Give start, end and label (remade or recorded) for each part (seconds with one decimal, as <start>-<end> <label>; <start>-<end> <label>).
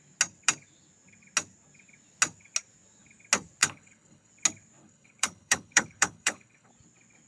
0.0-3.6 recorded; 3.6-4.3 remade; 4.3-4.8 recorded; 4.8-6.7 remade; 6.7-7.3 recorded